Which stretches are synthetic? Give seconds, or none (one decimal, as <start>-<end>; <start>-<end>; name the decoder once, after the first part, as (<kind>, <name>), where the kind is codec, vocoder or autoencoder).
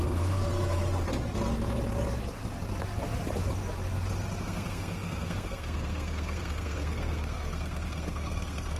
0.0-0.5 (codec, SNAC); 4.4-8.8